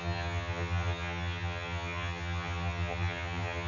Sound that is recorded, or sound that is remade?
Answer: remade